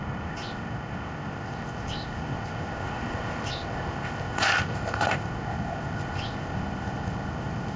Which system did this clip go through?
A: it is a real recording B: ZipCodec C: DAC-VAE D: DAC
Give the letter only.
B